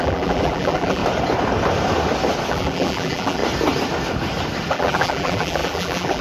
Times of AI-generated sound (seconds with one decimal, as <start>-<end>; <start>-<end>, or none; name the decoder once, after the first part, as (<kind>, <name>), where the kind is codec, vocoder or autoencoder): 0.0-1.0 (vocoder, BigVGAN v2); 2.5-3.4; 4.7-6.2

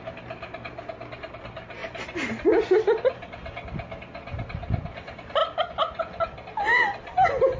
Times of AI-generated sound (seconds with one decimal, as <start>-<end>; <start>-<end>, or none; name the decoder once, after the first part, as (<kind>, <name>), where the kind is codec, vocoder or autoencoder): 1.8-2.3 (vocoder, BigVGAN v2)

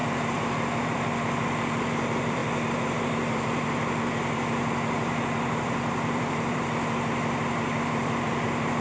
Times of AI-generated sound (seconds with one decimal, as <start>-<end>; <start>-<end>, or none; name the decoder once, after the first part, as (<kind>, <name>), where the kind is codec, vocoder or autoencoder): 0.8-8.8 (vocoder, BigVGAN v2)

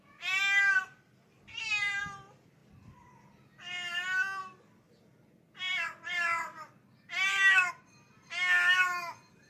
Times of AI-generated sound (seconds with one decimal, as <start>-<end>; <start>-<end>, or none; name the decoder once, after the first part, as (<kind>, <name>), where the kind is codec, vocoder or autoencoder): none

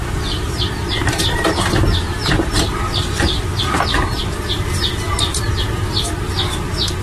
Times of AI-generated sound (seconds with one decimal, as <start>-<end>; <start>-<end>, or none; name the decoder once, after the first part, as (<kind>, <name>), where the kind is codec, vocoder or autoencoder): 0.0-4.2 (vocoder, BigVGAN v2)

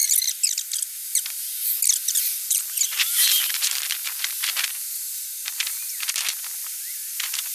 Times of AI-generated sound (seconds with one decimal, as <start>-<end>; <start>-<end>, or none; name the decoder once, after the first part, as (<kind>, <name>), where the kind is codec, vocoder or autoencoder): 2.2-7.5 (vocoder, BigVGAN v2)

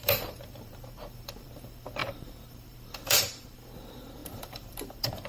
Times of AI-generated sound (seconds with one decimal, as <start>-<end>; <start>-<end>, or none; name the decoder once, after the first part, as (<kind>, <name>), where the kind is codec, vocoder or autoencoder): 0.0-5.3 (vocoder, BigVGAN v2)